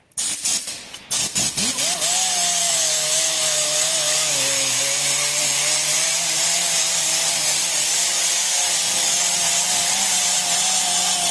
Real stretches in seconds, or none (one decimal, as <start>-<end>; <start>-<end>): 0.0-2.6; 4.8-11.3